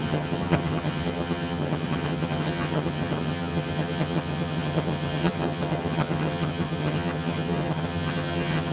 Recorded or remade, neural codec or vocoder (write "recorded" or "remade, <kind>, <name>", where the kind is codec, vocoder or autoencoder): remade, vocoder, HiFi-GAN